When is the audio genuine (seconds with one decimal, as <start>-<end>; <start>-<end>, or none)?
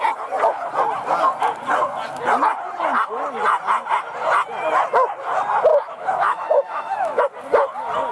0.0-5.7; 7.2-8.1